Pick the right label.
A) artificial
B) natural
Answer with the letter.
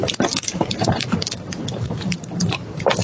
A